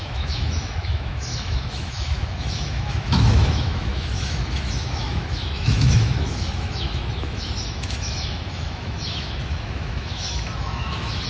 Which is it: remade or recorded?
remade